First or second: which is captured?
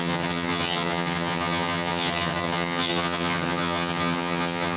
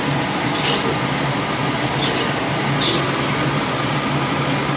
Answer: second